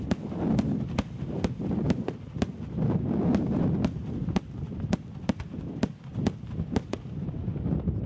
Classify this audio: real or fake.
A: real